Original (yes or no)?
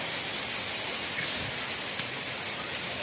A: yes